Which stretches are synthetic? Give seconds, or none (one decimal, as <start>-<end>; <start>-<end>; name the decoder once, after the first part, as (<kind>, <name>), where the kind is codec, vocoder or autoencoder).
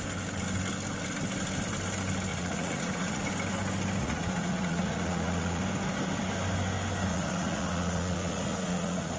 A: 2.3-3.2 (vocoder, Vocos); 4.0-5.6; 7.1-9.2